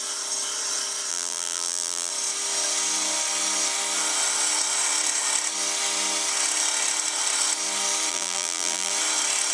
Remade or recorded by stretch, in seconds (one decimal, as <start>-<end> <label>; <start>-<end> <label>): 0.0-1.1 recorded; 1.1-2.1 remade; 2.1-8.1 recorded; 8.1-8.9 remade; 8.9-9.5 recorded